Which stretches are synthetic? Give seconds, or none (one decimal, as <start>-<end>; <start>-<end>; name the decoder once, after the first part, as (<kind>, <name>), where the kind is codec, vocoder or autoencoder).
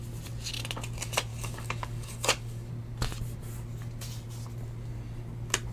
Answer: 1.3-2.7 (codec, DAC)